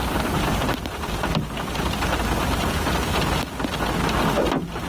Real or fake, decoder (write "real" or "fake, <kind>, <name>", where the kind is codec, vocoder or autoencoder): real